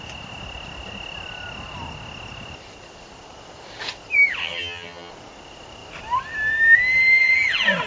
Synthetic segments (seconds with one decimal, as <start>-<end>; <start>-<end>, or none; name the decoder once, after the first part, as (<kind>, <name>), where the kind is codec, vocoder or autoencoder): 4.4-5.1 (vocoder, HiFi-GAN)